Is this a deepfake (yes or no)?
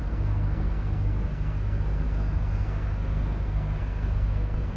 yes